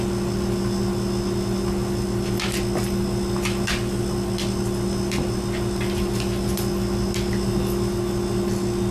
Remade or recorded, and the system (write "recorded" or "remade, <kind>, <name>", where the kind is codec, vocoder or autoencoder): recorded